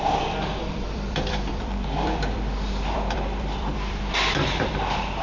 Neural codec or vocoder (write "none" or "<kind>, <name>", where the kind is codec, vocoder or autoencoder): vocoder, BigVGAN v2